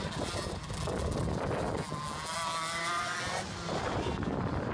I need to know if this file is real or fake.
real